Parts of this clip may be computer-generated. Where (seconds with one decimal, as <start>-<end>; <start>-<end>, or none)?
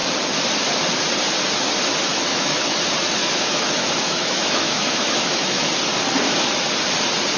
2.1-2.8; 3.2-5.7